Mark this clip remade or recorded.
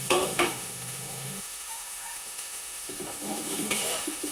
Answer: remade